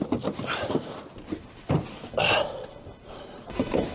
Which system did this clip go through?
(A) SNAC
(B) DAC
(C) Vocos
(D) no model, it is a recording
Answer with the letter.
D